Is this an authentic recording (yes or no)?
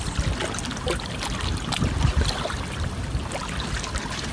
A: yes